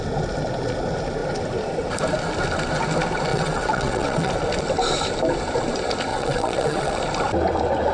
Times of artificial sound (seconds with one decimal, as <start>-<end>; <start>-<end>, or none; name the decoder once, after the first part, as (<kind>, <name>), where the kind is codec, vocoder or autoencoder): 3.3-4.3 (vocoder, WaveNeXt); 6.1-7.0